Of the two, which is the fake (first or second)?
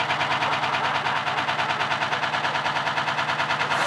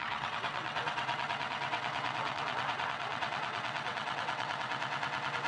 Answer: second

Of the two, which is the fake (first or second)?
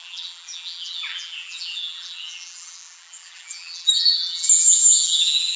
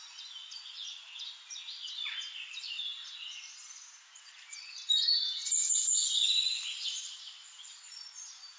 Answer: first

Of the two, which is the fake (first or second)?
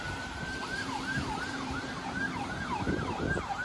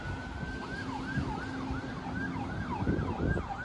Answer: first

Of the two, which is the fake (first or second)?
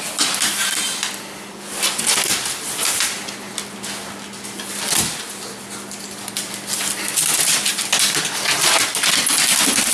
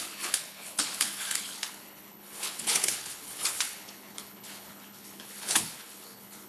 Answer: second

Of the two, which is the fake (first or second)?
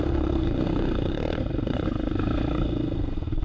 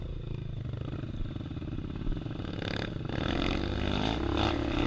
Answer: first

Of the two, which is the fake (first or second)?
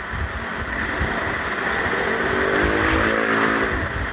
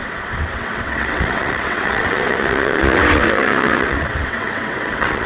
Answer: second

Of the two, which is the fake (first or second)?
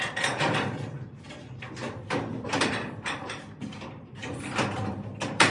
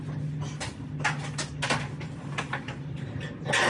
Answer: first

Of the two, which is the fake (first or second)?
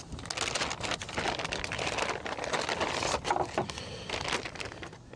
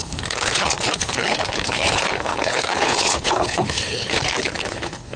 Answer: second